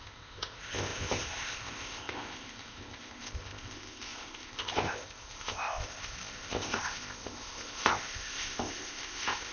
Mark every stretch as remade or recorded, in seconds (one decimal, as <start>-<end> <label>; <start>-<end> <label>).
0.0-9.5 remade